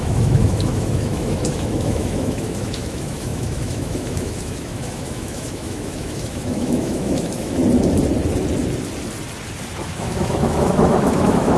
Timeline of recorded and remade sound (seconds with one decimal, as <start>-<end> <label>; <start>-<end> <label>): 0.0-7.6 remade; 7.6-9.8 recorded; 9.8-11.6 remade